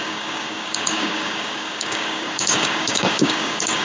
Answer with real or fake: fake